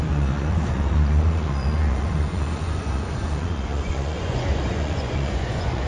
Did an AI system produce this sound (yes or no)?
yes